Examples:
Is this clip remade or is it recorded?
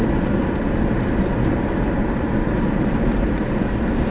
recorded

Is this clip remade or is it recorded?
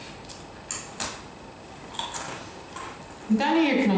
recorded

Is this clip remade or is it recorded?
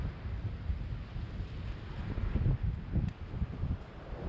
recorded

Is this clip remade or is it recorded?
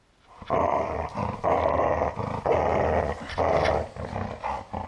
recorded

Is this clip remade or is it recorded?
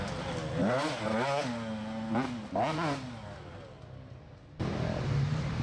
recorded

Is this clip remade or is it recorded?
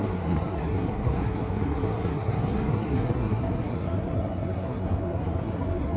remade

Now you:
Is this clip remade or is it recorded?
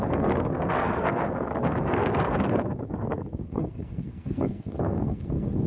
remade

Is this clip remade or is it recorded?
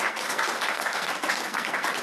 remade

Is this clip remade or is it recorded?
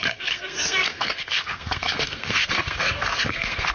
remade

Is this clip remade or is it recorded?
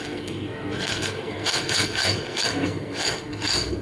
remade